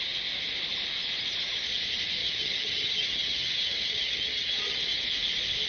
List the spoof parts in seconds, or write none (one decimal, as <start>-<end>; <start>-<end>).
2.2-5.0